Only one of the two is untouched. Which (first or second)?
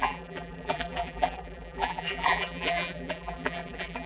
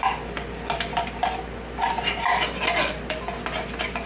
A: second